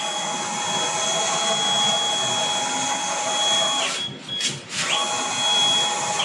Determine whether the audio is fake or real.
real